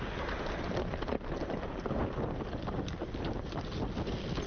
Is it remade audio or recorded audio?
recorded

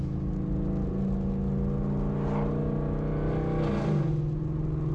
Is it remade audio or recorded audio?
recorded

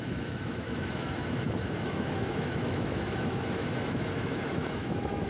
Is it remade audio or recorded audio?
remade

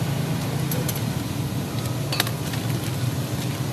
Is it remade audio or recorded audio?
recorded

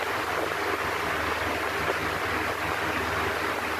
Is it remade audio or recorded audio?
recorded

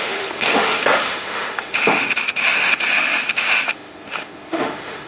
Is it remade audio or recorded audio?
remade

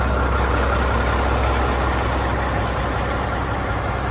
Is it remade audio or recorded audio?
recorded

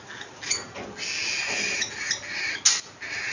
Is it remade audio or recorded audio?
recorded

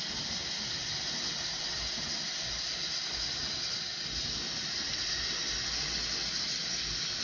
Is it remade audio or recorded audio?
recorded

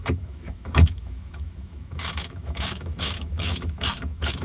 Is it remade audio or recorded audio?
remade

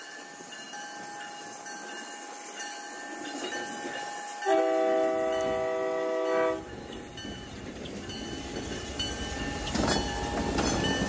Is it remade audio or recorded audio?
recorded